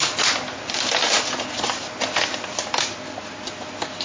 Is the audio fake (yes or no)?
no